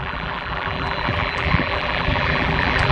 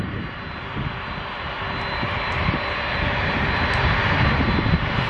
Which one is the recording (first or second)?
second